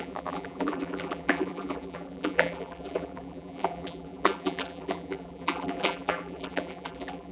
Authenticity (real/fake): fake